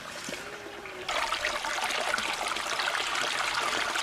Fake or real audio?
real